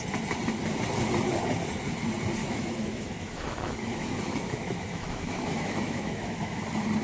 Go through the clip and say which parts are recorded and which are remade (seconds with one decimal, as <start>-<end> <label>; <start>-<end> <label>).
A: 0.0-2.4 recorded; 2.4-6.6 remade; 6.6-7.0 recorded